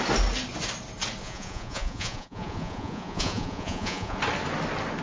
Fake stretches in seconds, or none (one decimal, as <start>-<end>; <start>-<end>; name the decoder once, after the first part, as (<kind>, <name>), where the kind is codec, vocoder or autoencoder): 1.2-4.2 (vocoder, Vocos)